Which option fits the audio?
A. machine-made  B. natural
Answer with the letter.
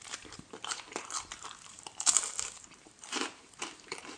A